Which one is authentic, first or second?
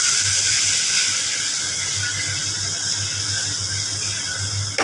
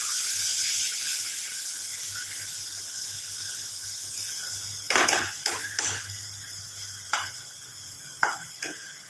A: first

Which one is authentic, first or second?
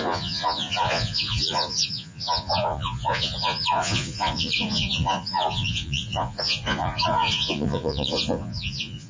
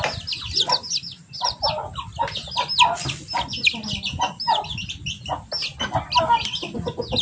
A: second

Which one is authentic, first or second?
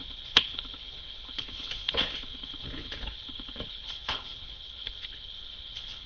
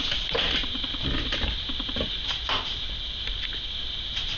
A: second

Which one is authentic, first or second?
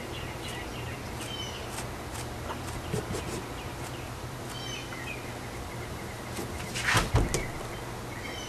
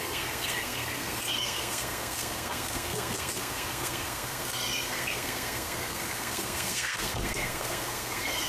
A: first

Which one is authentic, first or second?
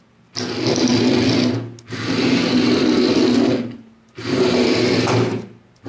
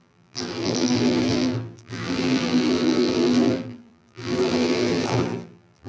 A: first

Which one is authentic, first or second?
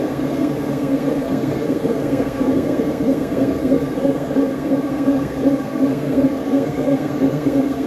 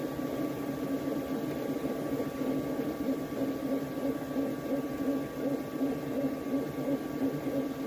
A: second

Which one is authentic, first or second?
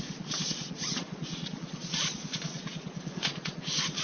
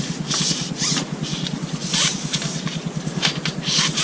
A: second